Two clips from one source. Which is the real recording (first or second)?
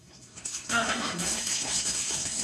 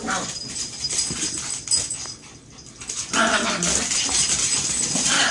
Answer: second